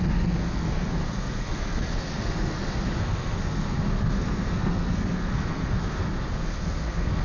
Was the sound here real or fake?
fake